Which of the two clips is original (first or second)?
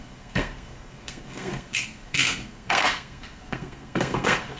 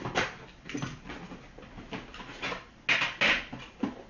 second